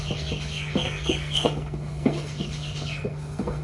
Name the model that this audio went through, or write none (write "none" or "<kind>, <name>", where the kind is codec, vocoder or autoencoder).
codec, SNAC